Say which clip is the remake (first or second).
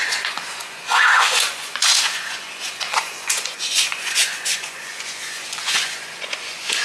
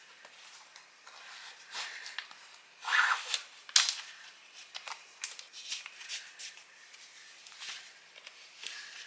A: first